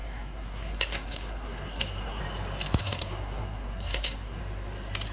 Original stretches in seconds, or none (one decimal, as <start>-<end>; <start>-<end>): 2.2-2.8; 4.4-5.1